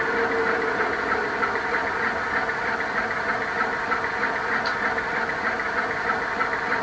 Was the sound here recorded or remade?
recorded